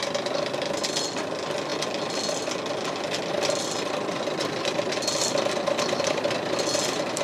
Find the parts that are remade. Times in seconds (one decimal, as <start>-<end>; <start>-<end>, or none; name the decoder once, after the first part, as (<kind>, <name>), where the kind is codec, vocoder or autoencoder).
none